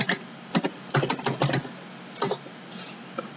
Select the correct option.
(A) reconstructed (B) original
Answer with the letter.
B